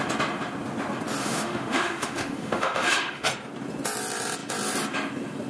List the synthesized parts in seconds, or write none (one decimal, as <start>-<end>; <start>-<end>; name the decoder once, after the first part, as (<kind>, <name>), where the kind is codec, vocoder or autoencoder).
1.2-3.3 (autoencoder, DAC-VAE)